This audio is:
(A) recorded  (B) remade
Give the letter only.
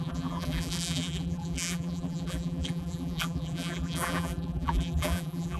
B